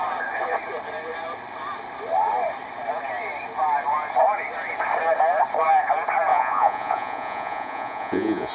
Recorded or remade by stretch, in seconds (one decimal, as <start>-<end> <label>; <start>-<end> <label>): 0.0-6.3 recorded; 6.3-8.5 remade